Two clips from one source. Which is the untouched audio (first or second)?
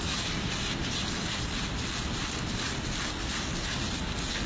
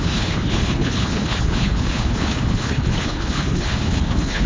first